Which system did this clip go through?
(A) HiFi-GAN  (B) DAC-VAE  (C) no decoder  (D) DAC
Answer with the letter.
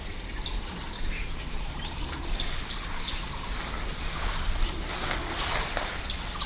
C